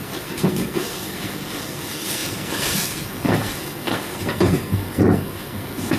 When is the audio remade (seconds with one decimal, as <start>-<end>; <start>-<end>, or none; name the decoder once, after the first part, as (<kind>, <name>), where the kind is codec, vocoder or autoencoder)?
0.0-6.0 (codec, SNAC)